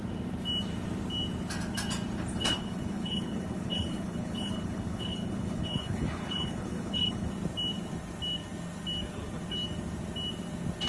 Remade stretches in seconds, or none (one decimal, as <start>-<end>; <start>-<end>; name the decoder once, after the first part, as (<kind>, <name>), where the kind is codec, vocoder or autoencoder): 2.3-7.3 (codec, HILCodec)